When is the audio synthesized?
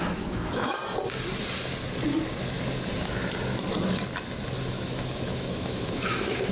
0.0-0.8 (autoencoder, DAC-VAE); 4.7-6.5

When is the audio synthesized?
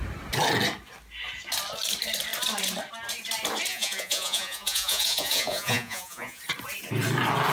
3.7-6.4 (vocoder, Vocos)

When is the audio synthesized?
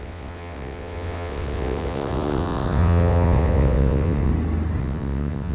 0.0-4.3 (vocoder, WaveNeXt); 4.8-5.5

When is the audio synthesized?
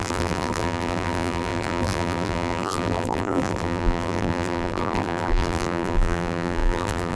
0.0-7.1 (vocoder, BigVGAN v2)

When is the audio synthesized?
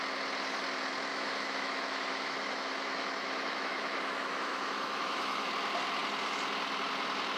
1.1-5.5 (autoencoder, DAC-VAE)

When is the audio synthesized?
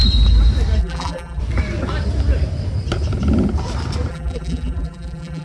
0.8-1.4 (vocoder, BigVGAN v2); 4.1-5.4